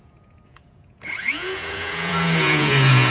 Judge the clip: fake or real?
fake